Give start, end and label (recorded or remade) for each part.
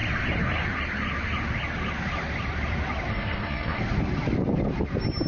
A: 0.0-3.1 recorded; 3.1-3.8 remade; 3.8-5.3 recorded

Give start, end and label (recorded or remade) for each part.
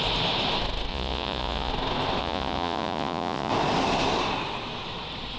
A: 0.0-0.9 recorded; 0.9-1.7 remade; 1.7-2.2 recorded; 2.2-3.5 remade; 3.5-5.4 recorded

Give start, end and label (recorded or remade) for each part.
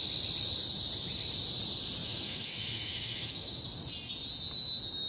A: 0.0-2.0 recorded; 2.0-3.6 remade; 3.6-5.1 recorded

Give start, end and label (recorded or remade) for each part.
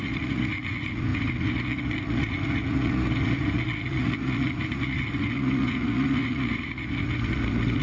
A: 0.0-7.8 remade